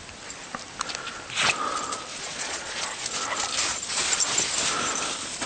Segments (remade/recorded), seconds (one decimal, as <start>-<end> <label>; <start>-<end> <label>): 0.0-2.1 recorded; 2.1-3.0 remade; 3.0-3.7 recorded; 3.7-4.2 remade; 4.2-5.5 recorded